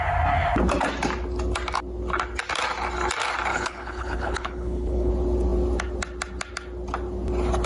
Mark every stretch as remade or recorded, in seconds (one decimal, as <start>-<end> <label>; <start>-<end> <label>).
0.0-3.5 recorded; 3.5-5.1 remade; 5.1-7.7 recorded